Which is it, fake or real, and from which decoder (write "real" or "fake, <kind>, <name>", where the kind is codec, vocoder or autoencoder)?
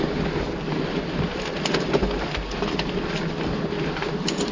real